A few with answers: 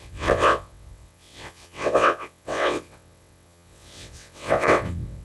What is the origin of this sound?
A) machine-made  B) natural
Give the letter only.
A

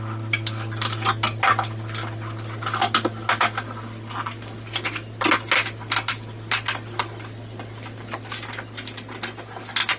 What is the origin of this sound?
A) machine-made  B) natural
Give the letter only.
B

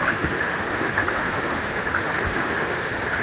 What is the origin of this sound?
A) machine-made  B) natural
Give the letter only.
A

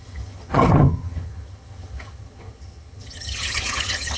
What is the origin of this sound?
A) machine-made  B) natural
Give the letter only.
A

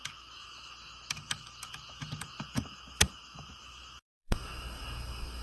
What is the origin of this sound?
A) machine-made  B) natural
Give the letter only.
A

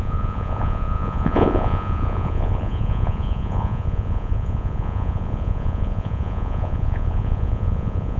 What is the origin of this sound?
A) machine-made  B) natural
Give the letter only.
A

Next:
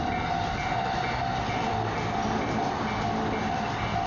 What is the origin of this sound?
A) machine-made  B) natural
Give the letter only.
B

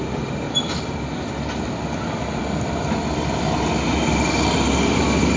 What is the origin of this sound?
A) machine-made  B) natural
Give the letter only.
B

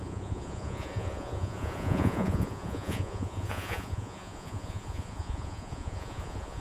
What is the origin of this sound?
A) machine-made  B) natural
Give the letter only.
A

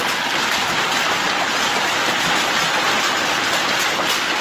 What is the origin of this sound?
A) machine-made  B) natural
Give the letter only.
B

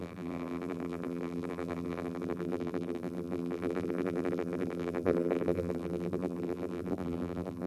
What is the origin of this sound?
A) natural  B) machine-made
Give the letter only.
B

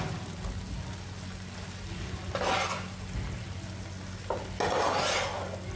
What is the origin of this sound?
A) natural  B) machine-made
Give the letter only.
A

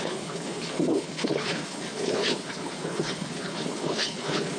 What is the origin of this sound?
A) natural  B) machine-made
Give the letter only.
B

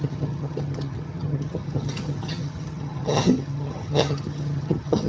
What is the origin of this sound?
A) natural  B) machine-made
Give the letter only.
B